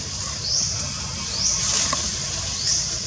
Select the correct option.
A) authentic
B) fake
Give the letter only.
A